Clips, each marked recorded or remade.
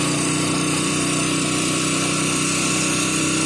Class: remade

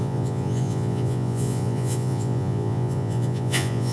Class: remade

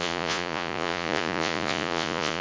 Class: remade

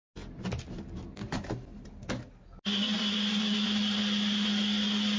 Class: recorded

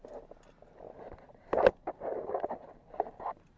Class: recorded